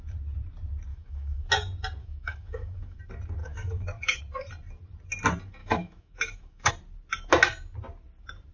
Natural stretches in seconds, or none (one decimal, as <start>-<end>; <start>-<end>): 0.0-0.9; 1.5-2.0; 3.0-3.4; 4.2-5.6; 6.7-8.5